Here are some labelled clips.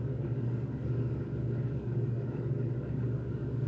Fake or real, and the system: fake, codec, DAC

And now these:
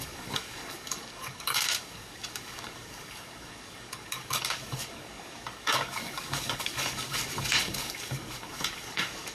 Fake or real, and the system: fake, codec, DAC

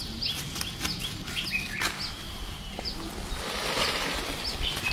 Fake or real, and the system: real